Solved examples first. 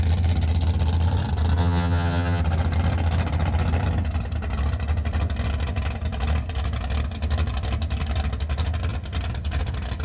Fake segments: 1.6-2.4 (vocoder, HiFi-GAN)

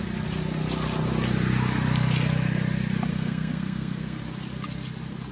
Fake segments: 3.1-4.2 (codec, SNAC)

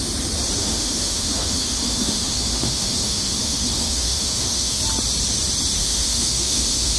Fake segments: 0.6-4.8 (autoencoder, DAC-VAE); 5.8-7.0

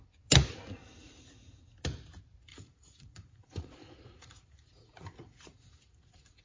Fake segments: 2.5-6.4 (vocoder, Vocos)